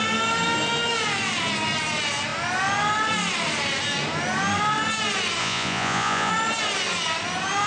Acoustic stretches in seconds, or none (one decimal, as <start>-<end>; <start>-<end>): 0.0-5.4; 6.3-7.7